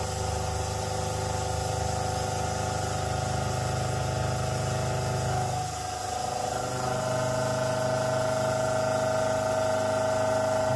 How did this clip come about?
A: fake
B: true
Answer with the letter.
B